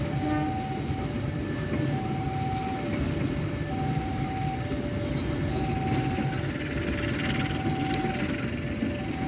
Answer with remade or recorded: recorded